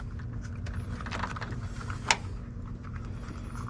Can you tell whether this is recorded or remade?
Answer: recorded